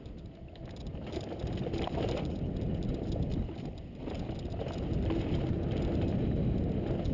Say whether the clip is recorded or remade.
recorded